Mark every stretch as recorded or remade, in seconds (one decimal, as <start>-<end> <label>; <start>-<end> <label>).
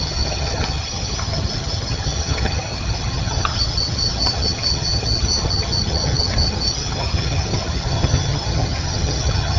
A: 0.0-9.6 remade